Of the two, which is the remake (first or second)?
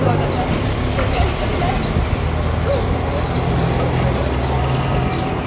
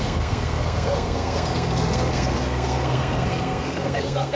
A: second